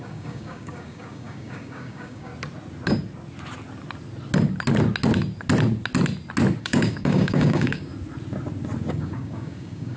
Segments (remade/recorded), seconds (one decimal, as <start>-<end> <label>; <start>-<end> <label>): 0.0-2.3 remade; 2.3-6.6 recorded; 6.6-7.9 remade; 7.9-8.9 recorded; 8.9-10.0 remade